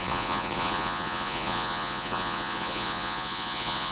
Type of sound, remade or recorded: remade